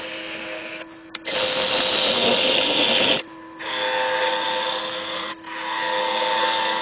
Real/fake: real